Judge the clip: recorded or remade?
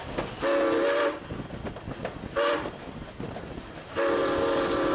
recorded